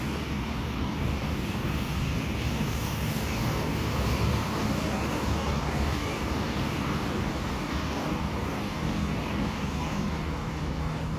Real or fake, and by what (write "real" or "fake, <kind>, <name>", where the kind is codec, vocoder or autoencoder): fake, codec, DAC